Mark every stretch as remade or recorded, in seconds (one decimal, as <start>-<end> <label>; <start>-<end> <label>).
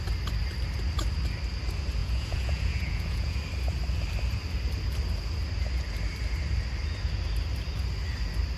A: 0.0-2.0 recorded; 2.0-3.4 remade; 3.4-8.6 recorded